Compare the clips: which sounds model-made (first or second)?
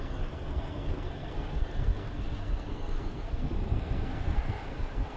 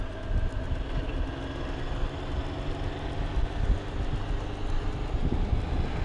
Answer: first